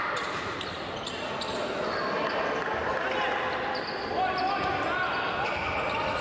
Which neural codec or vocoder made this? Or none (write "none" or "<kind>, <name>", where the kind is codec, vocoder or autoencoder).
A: none